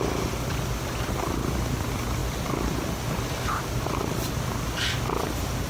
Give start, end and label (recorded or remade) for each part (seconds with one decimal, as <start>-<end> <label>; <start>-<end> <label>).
0.0-5.7 recorded